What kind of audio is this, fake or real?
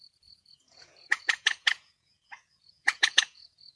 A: fake